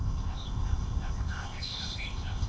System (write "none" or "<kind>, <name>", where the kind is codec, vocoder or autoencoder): codec, ZipCodec